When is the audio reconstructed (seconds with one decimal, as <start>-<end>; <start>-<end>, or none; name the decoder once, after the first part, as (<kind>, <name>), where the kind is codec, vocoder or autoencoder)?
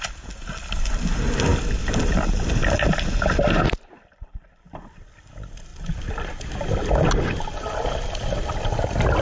none